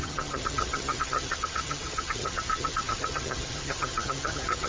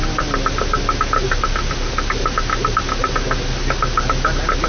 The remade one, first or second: first